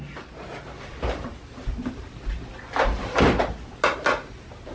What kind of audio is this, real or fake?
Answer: real